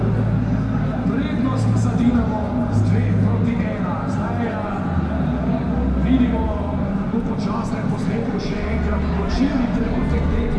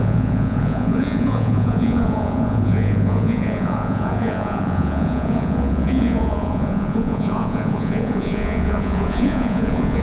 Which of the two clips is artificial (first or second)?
second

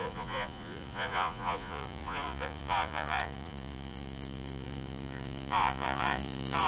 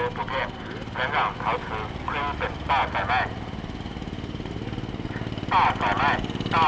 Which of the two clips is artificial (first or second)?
first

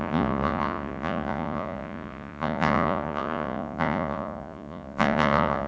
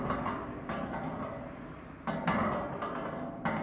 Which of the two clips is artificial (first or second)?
first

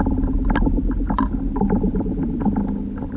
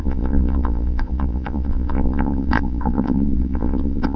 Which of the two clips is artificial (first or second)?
second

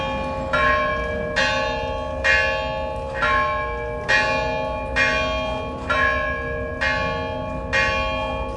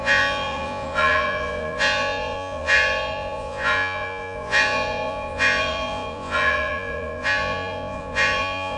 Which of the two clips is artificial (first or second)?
second